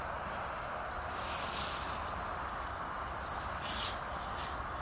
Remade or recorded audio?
recorded